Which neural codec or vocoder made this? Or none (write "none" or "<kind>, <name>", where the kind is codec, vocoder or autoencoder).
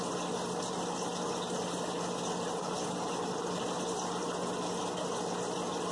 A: none